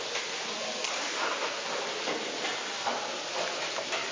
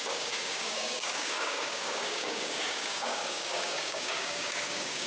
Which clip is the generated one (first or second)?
second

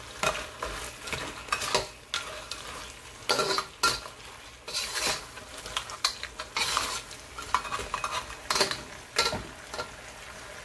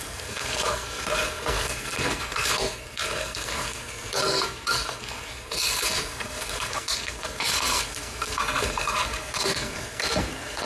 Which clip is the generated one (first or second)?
second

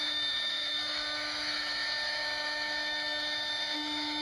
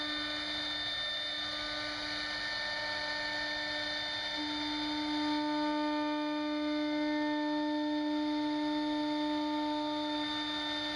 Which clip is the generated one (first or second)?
first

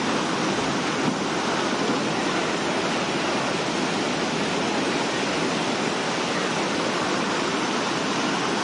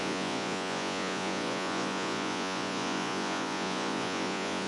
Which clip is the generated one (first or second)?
second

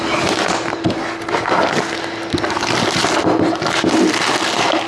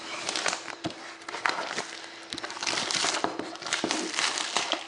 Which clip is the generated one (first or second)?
second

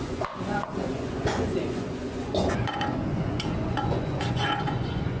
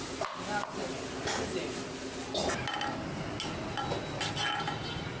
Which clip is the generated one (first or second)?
first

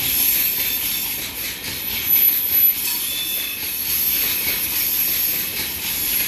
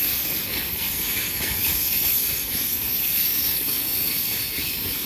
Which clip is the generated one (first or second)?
second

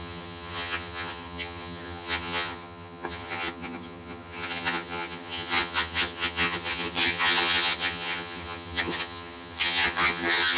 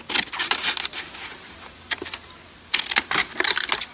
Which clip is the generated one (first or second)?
first